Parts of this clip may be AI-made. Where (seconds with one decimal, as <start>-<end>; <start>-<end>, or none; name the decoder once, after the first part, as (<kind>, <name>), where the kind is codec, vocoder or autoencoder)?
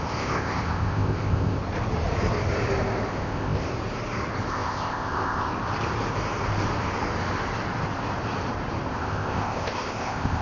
0.0-1.6 (codec, ZipCodec); 3.1-3.7; 4.5-5.5; 8.9-10.4